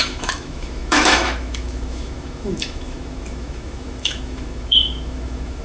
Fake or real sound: fake